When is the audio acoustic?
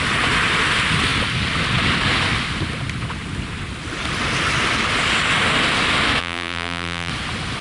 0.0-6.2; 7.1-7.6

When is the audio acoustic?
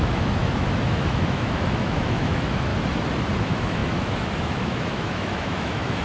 2.7-3.4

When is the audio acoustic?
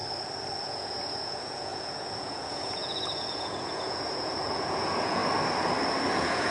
0.0-0.6; 5.2-6.1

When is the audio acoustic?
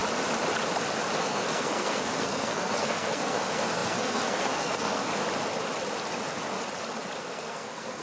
0.0-1.2; 5.1-7.2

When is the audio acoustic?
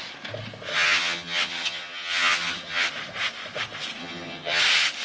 0.0-0.7; 2.9-4.0; 4.6-5.0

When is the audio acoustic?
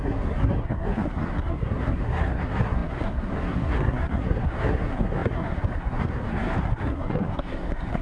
none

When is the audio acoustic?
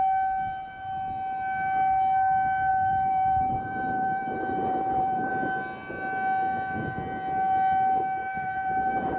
0.0-2.7; 5.3-8.2